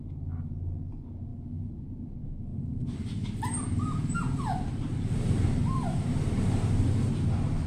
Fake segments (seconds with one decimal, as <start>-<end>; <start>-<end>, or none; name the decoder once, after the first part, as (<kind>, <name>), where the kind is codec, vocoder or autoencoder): 2.5-7.1 (vocoder, BigVGAN v2)